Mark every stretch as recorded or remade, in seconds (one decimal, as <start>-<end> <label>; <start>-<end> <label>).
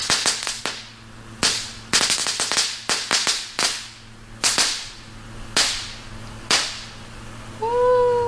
0.0-8.3 recorded